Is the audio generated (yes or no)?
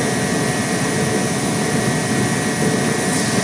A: no